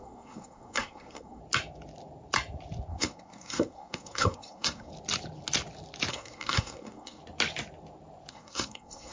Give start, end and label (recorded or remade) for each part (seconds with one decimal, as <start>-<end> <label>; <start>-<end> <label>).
0.0-1.4 remade; 1.4-2.9 recorded; 2.9-4.9 remade; 4.9-6.1 recorded; 6.1-7.2 remade; 7.2-8.3 recorded; 8.3-9.1 remade